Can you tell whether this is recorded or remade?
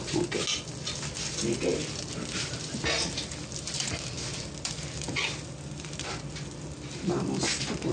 recorded